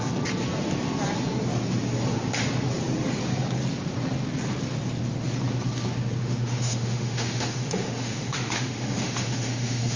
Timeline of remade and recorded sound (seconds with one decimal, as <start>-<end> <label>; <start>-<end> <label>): 0.0-6.2 recorded; 6.2-10.0 remade